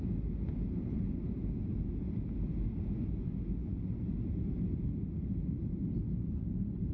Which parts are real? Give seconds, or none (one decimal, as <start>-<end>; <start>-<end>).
0.0-6.9